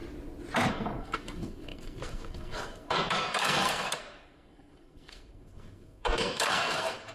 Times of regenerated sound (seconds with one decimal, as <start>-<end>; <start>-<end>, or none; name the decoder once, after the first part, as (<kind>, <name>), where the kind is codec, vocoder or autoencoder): 0.7-7.1 (codec, SNAC)

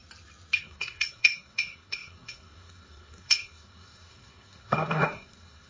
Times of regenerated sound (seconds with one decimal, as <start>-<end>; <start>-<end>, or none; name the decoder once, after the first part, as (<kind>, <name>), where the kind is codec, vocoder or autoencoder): 0.6-5.7 (codec, SNAC)

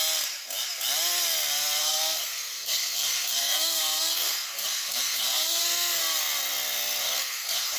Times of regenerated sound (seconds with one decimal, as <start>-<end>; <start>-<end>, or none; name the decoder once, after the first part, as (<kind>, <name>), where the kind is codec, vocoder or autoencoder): 1.8-6.0 (codec, SNAC); 7.0-7.8